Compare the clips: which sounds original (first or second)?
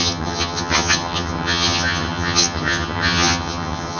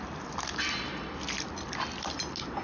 second